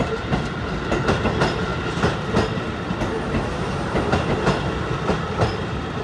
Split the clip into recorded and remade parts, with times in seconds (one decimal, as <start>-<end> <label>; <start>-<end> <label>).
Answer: 0.0-6.0 recorded